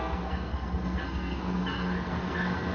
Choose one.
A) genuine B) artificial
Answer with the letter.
B